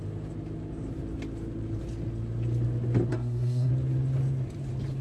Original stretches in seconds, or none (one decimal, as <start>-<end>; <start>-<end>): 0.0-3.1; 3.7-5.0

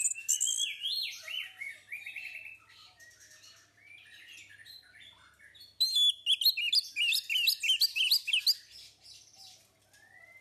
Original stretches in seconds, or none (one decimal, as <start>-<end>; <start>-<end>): 0.0-10.4

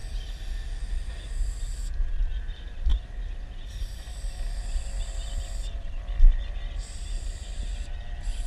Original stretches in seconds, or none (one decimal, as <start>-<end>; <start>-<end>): 0.0-8.5

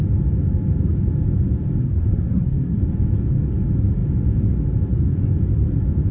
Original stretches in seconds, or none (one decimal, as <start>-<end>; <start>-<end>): 0.0-1.8; 2.8-6.1